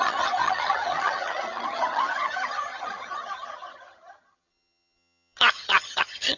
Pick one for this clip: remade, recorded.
remade